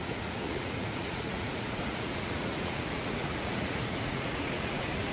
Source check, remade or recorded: remade